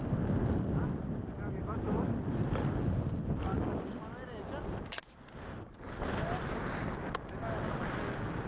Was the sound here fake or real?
real